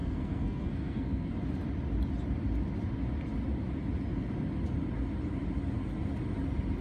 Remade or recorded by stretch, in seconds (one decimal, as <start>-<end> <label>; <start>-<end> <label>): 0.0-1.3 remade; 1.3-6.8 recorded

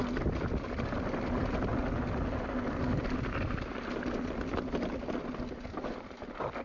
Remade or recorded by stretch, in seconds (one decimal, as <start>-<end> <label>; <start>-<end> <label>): 0.0-6.6 recorded

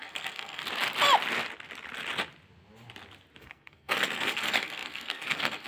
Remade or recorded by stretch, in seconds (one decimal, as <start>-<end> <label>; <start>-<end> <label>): 0.0-0.6 remade; 0.6-3.4 recorded; 3.4-5.7 remade